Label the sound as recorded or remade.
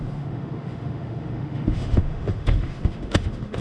remade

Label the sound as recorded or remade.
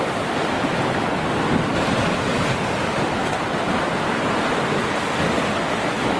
recorded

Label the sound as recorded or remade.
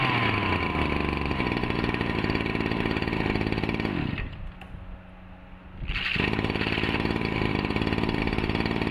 recorded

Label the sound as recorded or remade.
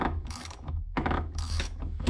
remade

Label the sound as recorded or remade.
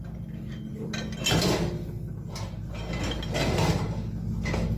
recorded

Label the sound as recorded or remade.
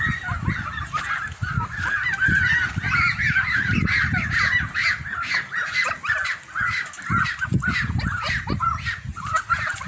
recorded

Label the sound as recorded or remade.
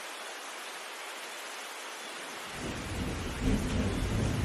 recorded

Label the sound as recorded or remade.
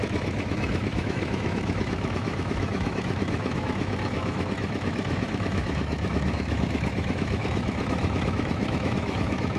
remade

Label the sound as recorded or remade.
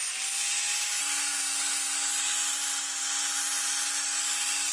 recorded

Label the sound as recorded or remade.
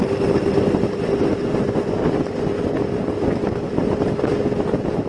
recorded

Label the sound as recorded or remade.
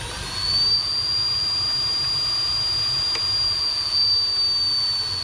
recorded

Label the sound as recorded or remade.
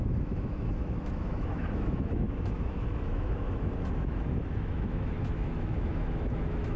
remade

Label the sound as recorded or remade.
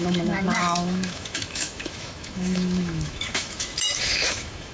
remade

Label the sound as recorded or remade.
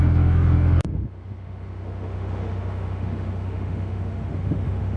remade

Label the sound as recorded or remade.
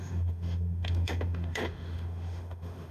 remade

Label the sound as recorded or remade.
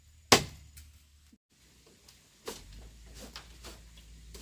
recorded